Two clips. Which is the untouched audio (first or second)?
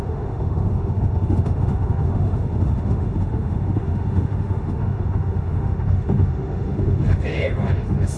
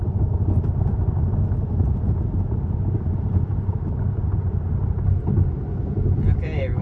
second